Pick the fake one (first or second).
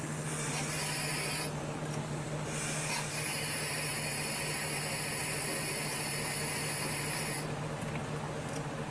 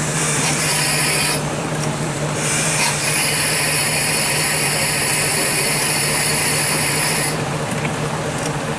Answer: second